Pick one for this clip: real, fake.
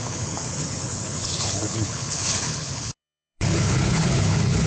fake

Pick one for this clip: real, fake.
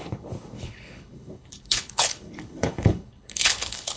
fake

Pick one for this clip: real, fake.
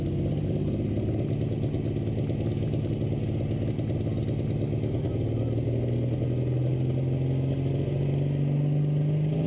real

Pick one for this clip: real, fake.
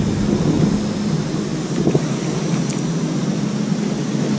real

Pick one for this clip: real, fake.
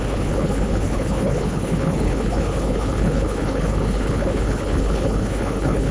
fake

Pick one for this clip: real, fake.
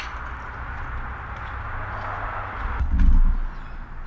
real